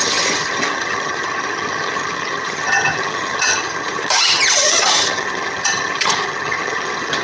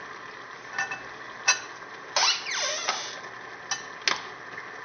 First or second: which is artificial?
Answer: first